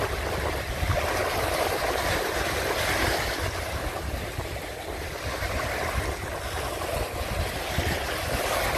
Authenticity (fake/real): real